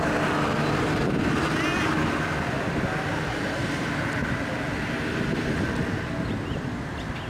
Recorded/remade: recorded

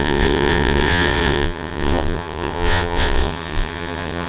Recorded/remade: remade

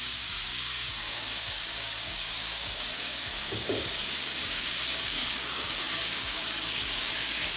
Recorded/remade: remade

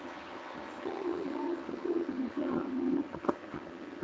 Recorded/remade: remade